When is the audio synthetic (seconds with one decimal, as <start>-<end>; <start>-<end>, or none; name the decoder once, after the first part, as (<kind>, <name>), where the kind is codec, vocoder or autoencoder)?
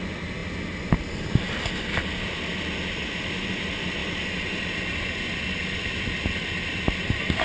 none